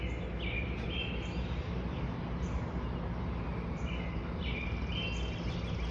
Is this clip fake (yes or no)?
no